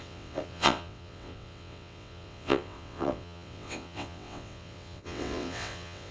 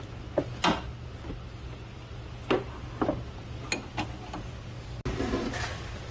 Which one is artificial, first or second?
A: first